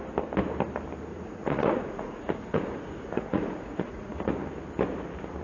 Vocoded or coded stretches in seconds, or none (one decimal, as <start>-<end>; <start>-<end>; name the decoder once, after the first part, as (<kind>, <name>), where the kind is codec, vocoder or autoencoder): 1.1-4.3 (vocoder, Vocos)